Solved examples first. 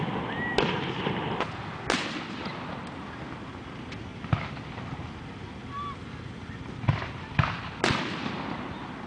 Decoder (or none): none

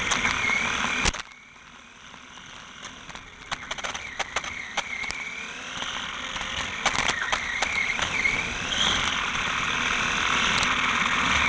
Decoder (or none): none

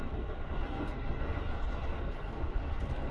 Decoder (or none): codec, SNAC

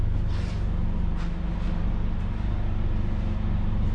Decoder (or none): none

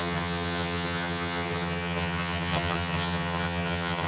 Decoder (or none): vocoder, HiFi-GAN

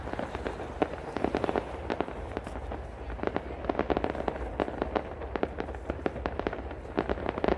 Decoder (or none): none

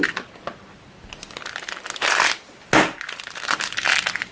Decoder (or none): none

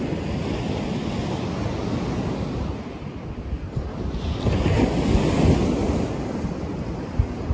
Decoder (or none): none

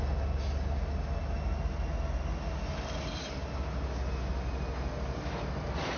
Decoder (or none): none